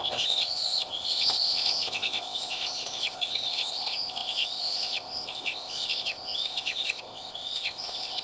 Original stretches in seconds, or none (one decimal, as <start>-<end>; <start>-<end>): none